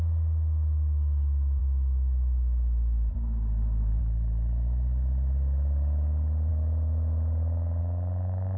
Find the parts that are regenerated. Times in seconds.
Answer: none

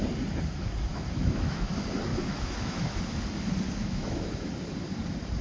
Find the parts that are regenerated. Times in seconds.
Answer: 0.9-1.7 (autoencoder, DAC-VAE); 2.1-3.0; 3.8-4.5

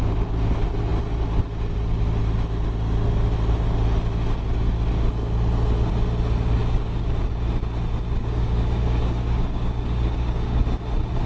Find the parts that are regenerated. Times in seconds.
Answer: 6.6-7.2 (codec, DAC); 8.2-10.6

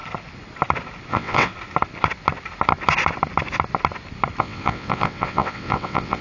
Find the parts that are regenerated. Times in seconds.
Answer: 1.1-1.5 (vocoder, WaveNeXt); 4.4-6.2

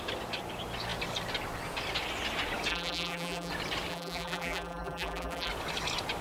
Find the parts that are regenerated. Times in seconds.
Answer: 2.7-3.5 (vocoder, BigVGAN v2); 3.9-5.5

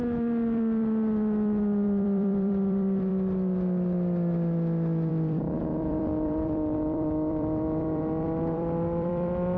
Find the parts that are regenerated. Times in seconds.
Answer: 0.0-3.1 (vocoder, BigVGAN v2); 5.1-9.6

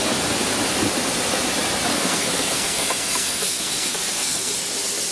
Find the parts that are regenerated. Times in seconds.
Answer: 1.9-4.5 (codec, SNAC)